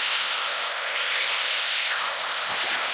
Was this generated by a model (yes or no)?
yes